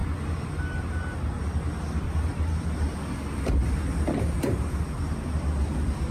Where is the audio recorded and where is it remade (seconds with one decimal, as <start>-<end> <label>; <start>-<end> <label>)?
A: 0.0-1.8 recorded; 1.8-2.3 remade; 2.3-6.1 recorded